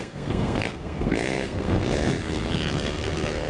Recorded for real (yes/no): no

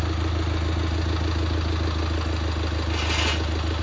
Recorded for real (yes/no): yes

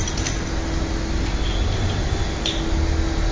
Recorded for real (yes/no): yes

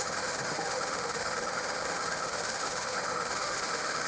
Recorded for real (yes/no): no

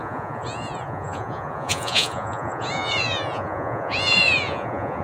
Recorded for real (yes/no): no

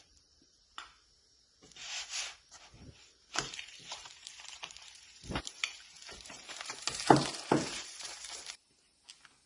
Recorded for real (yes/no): no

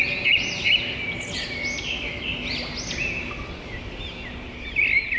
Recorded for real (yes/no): yes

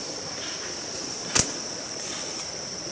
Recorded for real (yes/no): yes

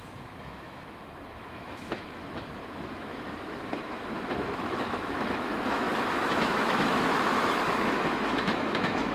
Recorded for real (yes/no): no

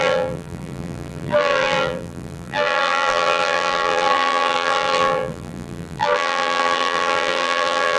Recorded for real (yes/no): no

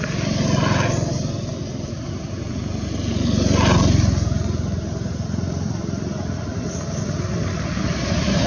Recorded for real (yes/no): yes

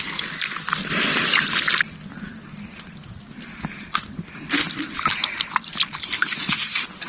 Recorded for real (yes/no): yes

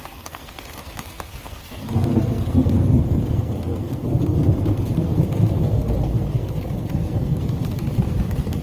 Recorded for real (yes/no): no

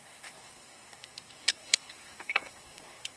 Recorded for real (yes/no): no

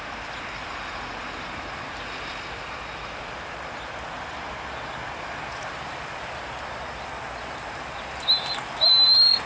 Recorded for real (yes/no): yes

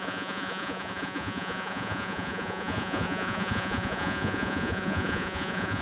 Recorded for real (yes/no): no